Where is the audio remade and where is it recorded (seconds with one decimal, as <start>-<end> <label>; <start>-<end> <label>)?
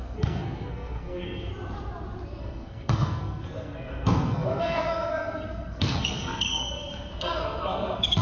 0.0-1.5 remade; 1.5-2.4 recorded; 2.4-8.2 remade